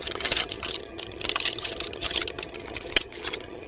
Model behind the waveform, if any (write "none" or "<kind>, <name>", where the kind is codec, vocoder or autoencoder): vocoder, HiFi-GAN